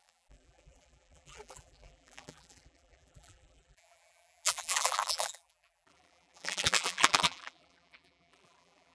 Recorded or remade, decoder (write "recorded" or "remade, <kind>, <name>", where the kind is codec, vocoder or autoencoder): remade, vocoder, BigVGAN v2